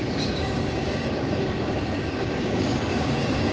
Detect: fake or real fake